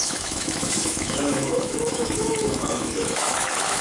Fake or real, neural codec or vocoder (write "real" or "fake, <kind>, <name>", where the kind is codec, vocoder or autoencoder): fake, autoencoder, DAC-VAE